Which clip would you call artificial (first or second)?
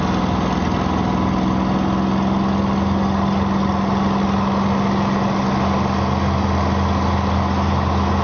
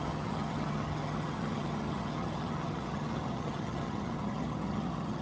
second